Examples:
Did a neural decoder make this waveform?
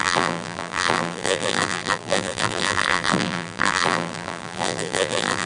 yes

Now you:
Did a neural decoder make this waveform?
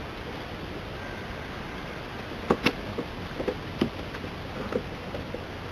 no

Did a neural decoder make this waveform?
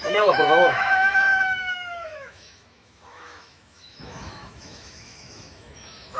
yes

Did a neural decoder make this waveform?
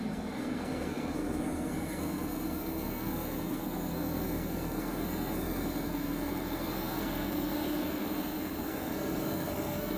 yes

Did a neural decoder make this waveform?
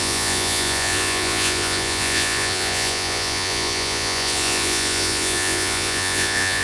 yes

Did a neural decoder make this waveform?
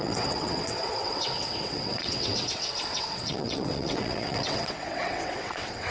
yes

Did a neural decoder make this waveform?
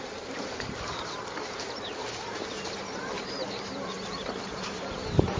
yes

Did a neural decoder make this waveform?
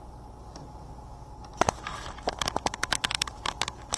no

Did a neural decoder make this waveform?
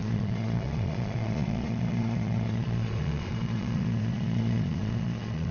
yes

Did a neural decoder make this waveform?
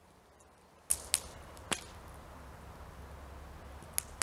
no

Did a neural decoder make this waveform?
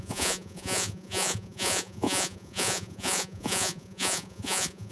yes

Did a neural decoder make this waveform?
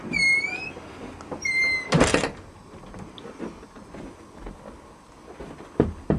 no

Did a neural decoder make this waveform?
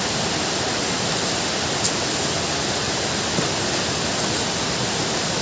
no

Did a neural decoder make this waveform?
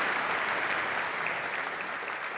no